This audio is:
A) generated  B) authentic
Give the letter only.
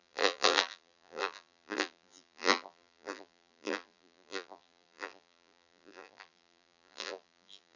A